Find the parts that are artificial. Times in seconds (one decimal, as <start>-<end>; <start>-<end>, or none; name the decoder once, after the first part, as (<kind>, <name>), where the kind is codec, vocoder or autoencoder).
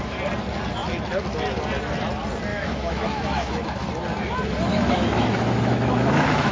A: 2.5-3.9 (autoencoder, DAC-VAE); 4.7-6.5